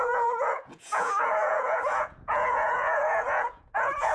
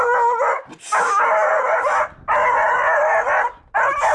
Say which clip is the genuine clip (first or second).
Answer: second